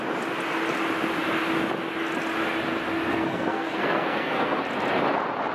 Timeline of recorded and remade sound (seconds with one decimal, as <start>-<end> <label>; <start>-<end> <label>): 0.0-3.1 recorded; 3.1-4.6 remade; 4.6-5.5 recorded